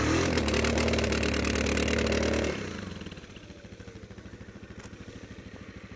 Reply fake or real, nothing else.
real